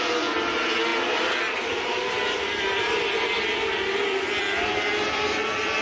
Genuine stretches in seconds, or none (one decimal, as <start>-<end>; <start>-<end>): 0.0-5.8